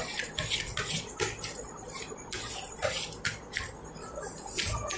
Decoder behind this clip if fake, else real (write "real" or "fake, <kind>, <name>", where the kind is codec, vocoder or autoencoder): real